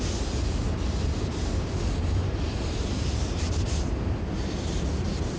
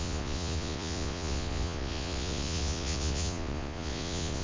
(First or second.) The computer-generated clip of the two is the second